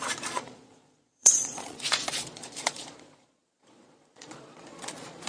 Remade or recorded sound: remade